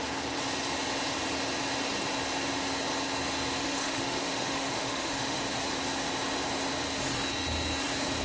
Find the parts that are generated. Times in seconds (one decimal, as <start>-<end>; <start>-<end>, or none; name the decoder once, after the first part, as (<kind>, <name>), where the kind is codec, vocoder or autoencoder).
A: 3.6-5.4 (autoencoder, DAC-VAE)